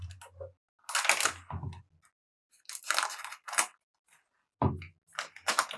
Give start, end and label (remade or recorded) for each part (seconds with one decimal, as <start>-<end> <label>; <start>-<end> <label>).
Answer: 0.0-5.8 recorded